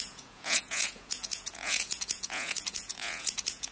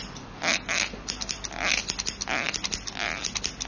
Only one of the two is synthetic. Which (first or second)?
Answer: first